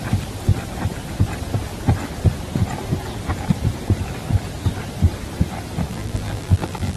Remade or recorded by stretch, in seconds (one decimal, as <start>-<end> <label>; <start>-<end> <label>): 0.0-5.9 recorded; 5.9-7.0 remade